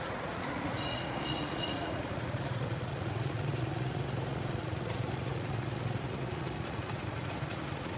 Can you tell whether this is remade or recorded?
remade